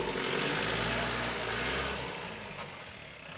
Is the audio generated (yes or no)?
no